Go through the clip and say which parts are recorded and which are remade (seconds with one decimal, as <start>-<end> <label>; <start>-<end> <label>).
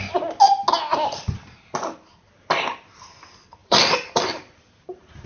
0.0-3.6 recorded; 3.6-4.4 remade; 4.4-5.3 recorded